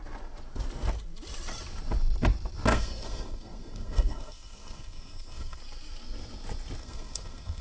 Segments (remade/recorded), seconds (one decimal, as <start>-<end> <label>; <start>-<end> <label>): 0.0-2.7 recorded; 2.7-5.6 remade; 5.6-6.8 recorded; 6.8-7.6 remade